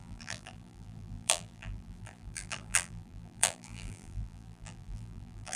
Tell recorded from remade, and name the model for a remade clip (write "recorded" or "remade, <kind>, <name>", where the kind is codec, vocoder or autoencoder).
remade, vocoder, BigVGAN v2